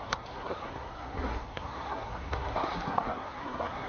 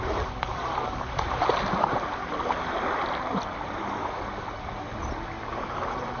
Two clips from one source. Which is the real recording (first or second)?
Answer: second